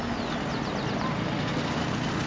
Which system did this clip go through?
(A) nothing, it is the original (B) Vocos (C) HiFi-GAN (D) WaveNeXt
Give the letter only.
A